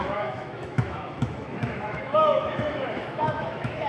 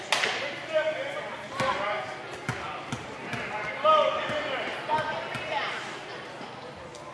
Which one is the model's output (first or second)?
first